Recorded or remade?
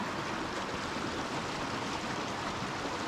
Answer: recorded